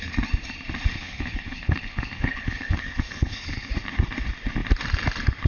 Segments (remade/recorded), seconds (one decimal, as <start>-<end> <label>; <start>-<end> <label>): 0.0-0.9 recorded; 0.9-3.7 remade; 3.7-5.5 recorded